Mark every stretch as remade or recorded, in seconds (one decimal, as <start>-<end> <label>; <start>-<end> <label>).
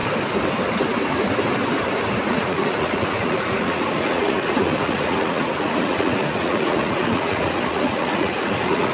0.0-2.3 recorded; 2.3-8.9 remade